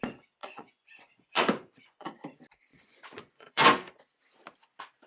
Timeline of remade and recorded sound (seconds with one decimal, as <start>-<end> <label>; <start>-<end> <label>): 0.0-0.4 recorded; 0.4-2.1 remade; 2.1-2.7 recorded; 2.7-4.0 remade; 4.0-5.1 recorded